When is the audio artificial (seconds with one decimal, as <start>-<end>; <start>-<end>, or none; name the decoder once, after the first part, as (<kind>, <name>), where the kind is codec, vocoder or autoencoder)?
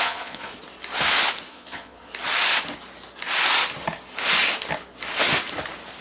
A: 0.0-0.5 (vocoder, Vocos); 1.5-2.1